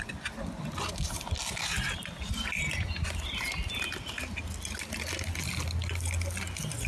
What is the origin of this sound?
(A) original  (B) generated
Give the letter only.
A